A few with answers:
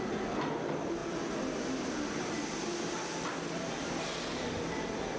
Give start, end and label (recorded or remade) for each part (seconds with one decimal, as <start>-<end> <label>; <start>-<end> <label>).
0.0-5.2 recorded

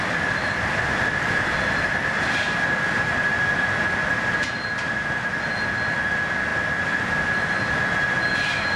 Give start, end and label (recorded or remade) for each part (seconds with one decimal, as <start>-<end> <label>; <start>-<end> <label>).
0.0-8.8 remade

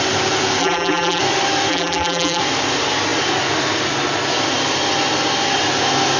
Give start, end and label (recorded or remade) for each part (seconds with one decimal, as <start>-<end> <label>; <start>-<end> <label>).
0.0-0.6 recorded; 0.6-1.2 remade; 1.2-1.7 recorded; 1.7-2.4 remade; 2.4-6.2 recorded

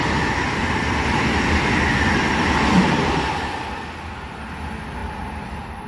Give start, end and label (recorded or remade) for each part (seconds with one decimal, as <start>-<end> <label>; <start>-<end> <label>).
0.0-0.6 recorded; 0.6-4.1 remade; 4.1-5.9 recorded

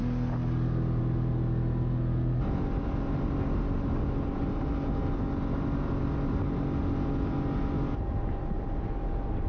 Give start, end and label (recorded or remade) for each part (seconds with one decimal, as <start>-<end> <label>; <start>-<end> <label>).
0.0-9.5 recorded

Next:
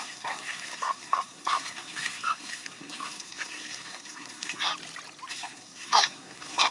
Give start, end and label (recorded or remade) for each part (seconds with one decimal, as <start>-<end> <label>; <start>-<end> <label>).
0.0-4.7 remade; 4.7-5.3 recorded; 5.3-6.7 remade

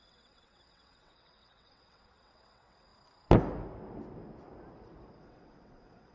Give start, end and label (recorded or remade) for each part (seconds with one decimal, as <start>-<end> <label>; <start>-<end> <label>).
0.0-2.9 remade; 2.9-5.2 recorded; 5.2-6.1 remade

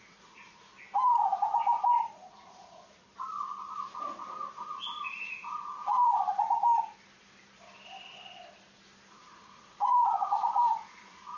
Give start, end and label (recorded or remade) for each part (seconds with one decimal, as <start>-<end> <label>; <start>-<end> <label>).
0.0-0.7 remade; 0.7-1.8 recorded; 1.8-3.1 remade; 3.1-4.5 recorded; 4.5-6.3 remade; 6.3-9.1 recorded; 9.1-11.4 remade